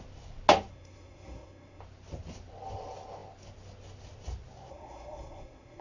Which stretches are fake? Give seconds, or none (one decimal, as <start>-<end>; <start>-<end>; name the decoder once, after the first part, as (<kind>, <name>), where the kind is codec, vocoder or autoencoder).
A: 0.7-1.8 (codec, SNAC); 4.7-5.8

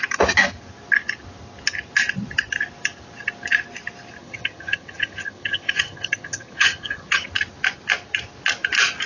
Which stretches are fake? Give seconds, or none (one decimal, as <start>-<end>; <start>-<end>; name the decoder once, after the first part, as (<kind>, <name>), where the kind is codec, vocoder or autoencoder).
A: 4.2-7.3 (vocoder, HiFi-GAN)

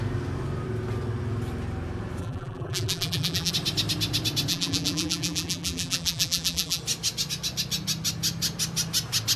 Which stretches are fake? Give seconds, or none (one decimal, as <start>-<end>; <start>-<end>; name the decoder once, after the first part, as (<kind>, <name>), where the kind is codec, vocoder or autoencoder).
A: 2.2-3.5 (vocoder, BigVGAN v2); 4.5-6.8

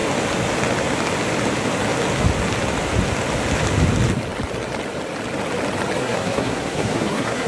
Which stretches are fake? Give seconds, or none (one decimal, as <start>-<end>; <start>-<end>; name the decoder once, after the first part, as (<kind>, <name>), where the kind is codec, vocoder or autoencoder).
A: 6.0-7.5 (codec, SNAC)

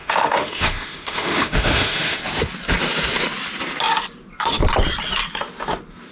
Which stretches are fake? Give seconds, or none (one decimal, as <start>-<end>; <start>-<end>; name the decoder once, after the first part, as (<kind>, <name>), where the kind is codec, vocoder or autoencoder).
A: 0.0-2.2 (autoencoder, DAC-VAE)

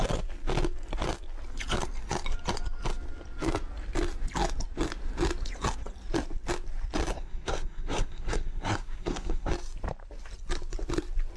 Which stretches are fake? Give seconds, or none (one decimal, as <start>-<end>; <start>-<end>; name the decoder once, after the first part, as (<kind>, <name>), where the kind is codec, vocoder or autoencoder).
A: 7.1-9.5 (codec, SNAC)

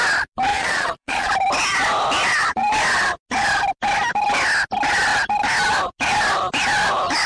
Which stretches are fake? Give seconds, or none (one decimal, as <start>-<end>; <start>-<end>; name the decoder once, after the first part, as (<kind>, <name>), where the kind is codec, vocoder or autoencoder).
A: 0.5-1.3 (vocoder, Vocos)

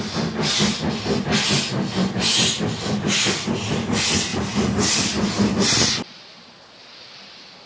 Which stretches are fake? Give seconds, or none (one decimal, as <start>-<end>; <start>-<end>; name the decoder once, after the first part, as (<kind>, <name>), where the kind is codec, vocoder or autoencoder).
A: none